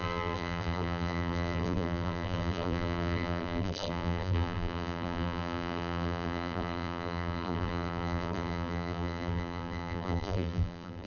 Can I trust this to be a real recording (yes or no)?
no